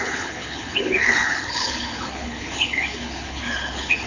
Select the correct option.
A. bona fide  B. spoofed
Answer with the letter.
B